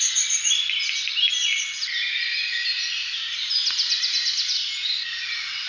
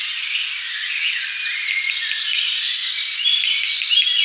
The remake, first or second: second